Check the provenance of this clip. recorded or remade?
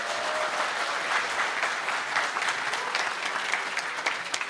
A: recorded